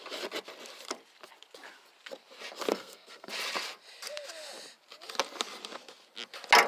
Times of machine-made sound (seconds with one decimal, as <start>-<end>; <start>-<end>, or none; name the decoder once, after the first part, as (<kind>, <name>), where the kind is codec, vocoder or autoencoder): 2.7-3.3 (codec, SNAC)